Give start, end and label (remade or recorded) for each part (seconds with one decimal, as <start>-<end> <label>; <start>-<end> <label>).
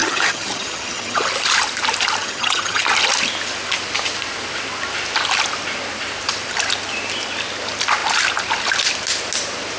0.0-1.3 remade; 1.3-2.2 recorded; 2.2-2.8 remade; 2.8-9.8 recorded